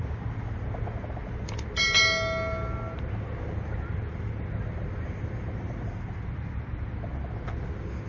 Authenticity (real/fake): real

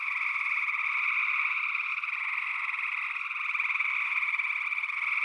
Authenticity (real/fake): real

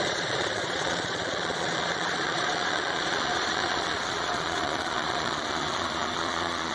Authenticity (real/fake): fake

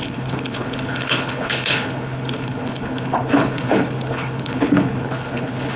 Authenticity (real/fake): fake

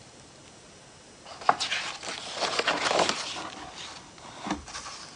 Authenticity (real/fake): real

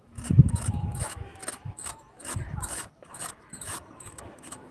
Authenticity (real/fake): fake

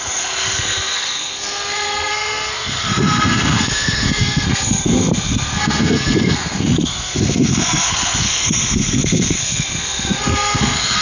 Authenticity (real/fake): fake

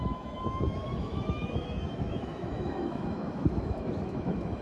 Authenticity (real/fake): fake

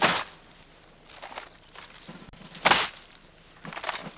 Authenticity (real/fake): real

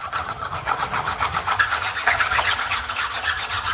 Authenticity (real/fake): fake